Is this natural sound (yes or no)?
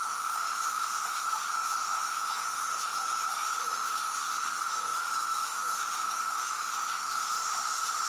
no